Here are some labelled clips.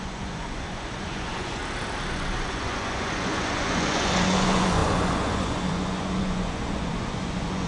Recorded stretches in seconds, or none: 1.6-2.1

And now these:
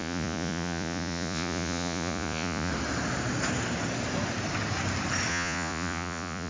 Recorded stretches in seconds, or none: 2.7-5.3

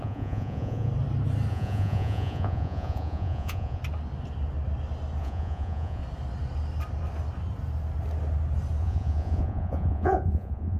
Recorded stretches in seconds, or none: 0.9-1.5; 3.8-5.2; 6.0-8.8